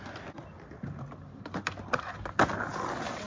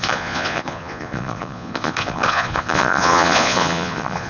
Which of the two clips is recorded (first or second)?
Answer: first